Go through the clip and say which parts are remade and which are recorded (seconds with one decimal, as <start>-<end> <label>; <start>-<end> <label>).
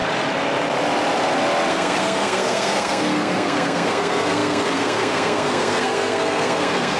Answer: 0.0-1.7 recorded; 1.7-7.0 remade